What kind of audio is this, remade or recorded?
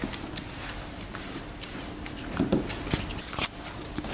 recorded